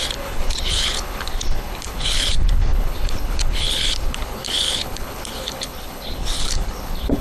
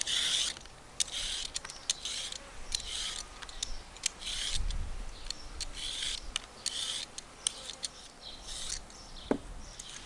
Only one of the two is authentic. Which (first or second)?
second